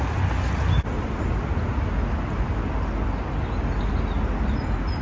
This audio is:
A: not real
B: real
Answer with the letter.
B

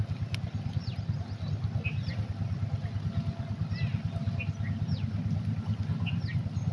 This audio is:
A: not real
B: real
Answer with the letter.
B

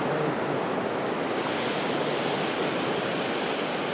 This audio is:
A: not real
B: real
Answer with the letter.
B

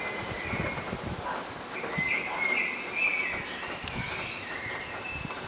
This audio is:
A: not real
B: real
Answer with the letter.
B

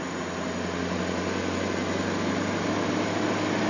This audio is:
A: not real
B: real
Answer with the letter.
B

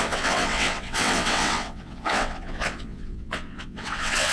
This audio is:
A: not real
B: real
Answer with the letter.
A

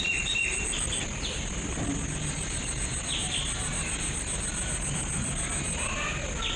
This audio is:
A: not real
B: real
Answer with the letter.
B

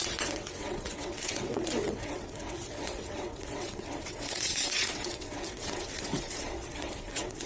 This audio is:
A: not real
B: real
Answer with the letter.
A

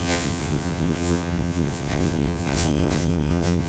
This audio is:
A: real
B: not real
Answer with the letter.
B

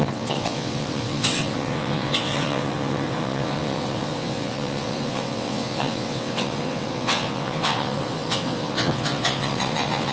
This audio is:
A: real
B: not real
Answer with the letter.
B